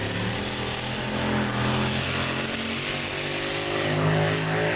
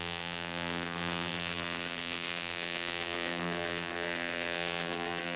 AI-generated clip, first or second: second